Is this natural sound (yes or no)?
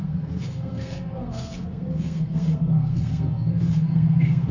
no